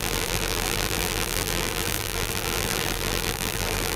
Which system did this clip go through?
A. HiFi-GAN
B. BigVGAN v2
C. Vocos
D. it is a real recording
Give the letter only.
B